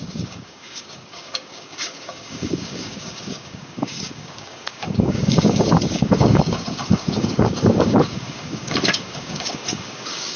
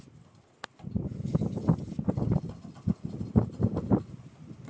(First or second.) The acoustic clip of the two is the second